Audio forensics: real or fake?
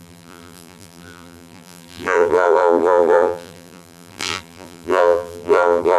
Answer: fake